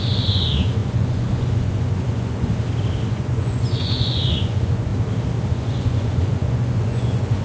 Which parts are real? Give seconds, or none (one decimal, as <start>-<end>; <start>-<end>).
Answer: 2.5-3.1; 4.9-5.5